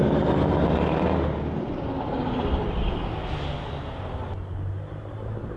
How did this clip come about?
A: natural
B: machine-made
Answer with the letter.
A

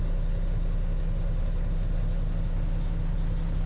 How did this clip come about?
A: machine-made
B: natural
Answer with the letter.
B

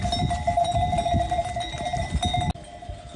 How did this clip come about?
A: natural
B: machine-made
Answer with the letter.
A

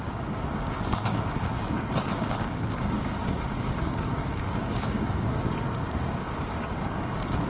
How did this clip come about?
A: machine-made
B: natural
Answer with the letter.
A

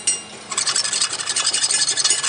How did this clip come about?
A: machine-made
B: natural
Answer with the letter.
B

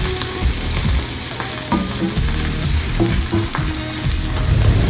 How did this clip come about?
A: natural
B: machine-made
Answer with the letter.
A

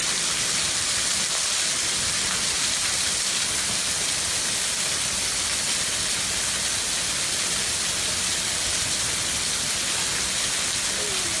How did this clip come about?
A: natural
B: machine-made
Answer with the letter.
A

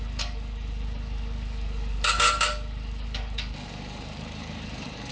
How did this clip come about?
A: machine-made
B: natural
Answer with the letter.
A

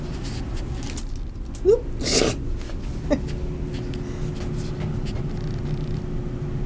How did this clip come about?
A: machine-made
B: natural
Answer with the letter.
B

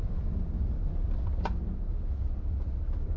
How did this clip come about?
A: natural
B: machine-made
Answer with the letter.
A